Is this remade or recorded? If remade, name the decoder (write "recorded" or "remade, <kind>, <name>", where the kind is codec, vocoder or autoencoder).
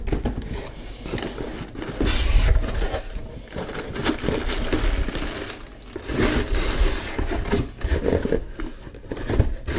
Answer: recorded